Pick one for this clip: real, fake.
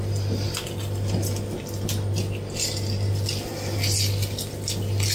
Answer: real